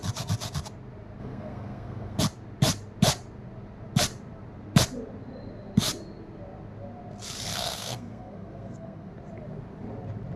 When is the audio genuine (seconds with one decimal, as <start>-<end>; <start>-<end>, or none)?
0.0-1.2; 2.2-7.5; 9.1-10.4